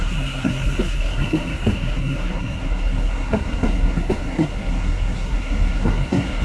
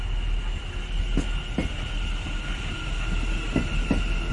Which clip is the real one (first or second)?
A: second